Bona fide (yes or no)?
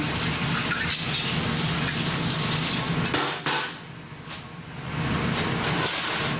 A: yes